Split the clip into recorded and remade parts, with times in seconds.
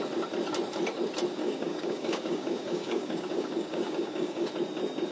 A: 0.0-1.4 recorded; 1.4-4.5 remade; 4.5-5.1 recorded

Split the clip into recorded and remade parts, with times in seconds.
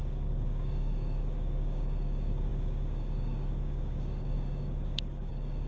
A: 0.0-5.7 remade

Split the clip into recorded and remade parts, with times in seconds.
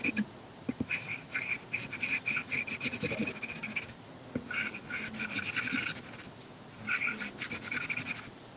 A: 0.0-3.2 recorded; 3.2-3.9 remade; 3.9-8.6 recorded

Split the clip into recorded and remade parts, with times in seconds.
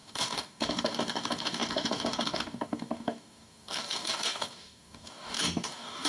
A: 0.0-6.1 remade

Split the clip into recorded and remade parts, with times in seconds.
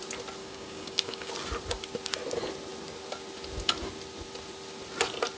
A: 0.0-0.4 recorded; 0.4-1.3 remade; 1.3-5.4 recorded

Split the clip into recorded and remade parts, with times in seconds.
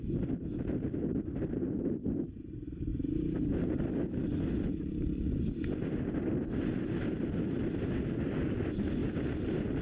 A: 0.0-9.8 recorded